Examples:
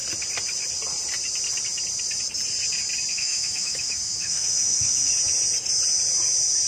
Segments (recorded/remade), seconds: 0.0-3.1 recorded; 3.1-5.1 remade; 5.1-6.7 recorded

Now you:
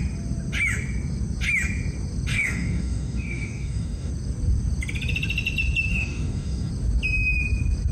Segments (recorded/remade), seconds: 0.0-2.3 recorded; 2.3-4.1 remade; 4.1-5.9 recorded; 5.9-6.7 remade; 6.7-7.9 recorded

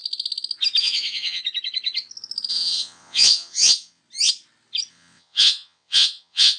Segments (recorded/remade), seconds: 0.0-0.8 recorded; 0.8-1.4 remade; 1.4-2.5 recorded; 2.5-4.0 remade; 4.0-4.9 recorded; 4.9-6.6 remade

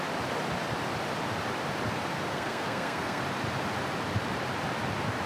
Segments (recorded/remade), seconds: 0.0-2.3 recorded; 2.3-3.2 remade; 3.2-5.3 recorded

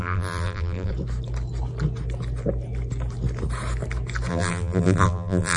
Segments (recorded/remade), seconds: 0.0-0.9 remade; 0.9-4.3 recorded; 4.3-5.6 remade

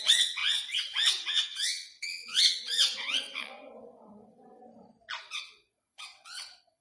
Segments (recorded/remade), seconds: 0.0-4.6 remade; 4.6-5.2 recorded; 5.2-6.8 remade

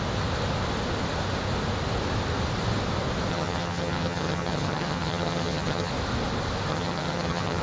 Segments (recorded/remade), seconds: 0.0-3.3 recorded; 3.3-5.9 remade; 5.9-6.7 recorded; 6.7-7.6 remade